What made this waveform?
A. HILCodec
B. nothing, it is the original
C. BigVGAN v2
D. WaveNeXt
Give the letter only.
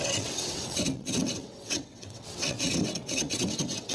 D